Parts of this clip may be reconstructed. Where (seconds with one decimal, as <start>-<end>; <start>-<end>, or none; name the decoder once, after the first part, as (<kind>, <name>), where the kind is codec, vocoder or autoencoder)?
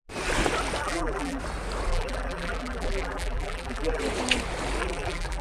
0.8-1.4 (vocoder, BigVGAN v2); 1.9-4.0; 4.8-5.4